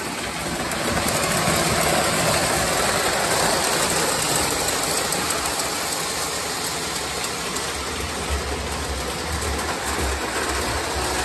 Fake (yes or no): no